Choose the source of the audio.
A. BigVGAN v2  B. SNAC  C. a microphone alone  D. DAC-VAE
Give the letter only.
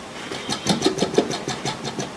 C